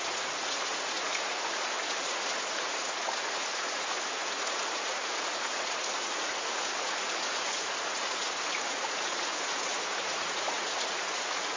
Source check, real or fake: fake